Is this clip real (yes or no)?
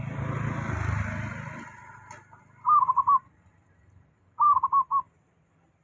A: yes